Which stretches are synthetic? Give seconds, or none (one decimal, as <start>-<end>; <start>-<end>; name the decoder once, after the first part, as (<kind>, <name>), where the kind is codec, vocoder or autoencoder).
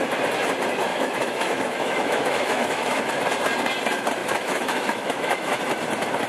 0.9-3.1 (autoencoder, DAC-VAE); 4.2-5.6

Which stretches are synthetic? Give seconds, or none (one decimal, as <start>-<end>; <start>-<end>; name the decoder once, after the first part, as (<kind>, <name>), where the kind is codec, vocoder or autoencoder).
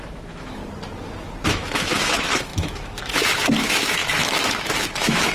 0.0-0.6 (autoencoder, DAC-VAE); 1.5-5.3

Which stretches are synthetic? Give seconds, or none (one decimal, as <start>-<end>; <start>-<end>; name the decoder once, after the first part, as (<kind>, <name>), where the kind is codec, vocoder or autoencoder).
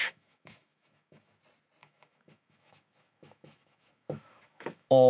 0.0-1.4 (autoencoder, DAC-VAE); 1.8-5.1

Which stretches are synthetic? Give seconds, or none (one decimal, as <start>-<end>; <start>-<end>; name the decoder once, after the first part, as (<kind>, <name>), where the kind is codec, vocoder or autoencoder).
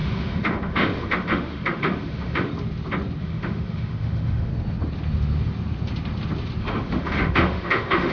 0.0-2.5 (autoencoder, DAC-VAE); 3.2-4.5; 6.6-8.1